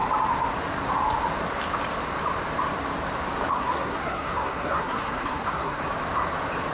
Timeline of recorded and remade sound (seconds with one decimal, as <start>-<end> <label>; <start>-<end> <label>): 0.0-3.5 recorded; 3.5-5.8 remade; 5.8-6.7 recorded